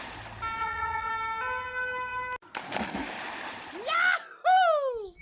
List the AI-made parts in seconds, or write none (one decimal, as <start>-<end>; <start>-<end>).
0.6-1.1